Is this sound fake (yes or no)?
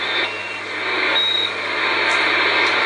no